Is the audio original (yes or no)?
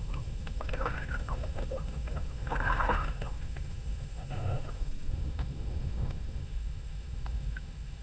no